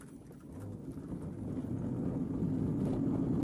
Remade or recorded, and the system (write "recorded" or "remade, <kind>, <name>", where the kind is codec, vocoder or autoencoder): recorded